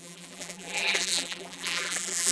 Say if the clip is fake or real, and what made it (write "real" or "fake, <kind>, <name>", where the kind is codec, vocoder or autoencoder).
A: fake, vocoder, BigVGAN v2